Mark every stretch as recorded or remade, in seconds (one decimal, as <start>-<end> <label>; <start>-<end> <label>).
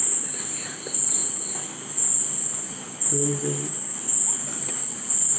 0.0-5.4 recorded